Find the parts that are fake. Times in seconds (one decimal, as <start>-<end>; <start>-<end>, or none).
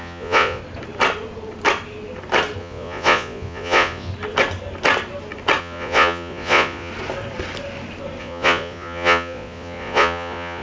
0.0-0.6; 2.6-4.1; 5.6-6.9; 8.2-10.6